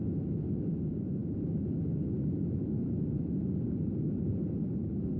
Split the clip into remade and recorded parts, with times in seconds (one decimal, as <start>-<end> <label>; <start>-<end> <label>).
0.0-5.2 recorded